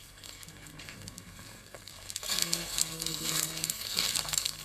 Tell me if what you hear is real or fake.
fake